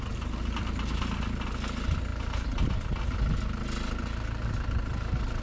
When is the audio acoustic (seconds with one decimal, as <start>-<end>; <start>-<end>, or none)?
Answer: 0.0-5.4

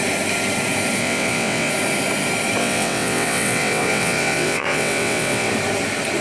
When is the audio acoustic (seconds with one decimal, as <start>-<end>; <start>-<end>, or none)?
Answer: 0.0-1.0; 1.7-2.6; 5.5-6.2

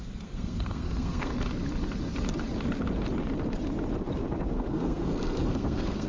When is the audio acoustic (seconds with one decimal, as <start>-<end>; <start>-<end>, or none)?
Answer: 1.3-4.5

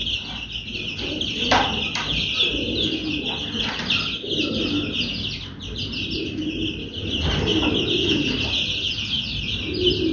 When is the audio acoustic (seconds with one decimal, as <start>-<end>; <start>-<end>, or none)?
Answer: 0.0-10.1

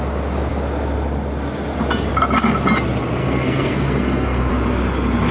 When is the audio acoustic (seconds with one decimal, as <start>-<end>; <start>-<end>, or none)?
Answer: 0.0-3.2; 4.5-5.3

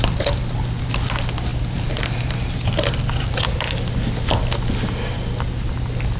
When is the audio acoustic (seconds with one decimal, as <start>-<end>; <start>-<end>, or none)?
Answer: 0.0-6.2

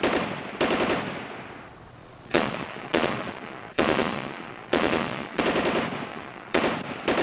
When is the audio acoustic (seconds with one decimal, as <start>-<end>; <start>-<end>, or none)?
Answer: 0.0-2.0; 5.4-6.1; 6.6-7.2

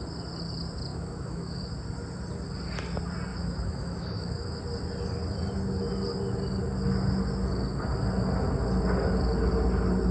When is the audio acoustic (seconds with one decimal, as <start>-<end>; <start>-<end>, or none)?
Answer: 0.0-0.9; 1.6-3.3; 4.6-10.1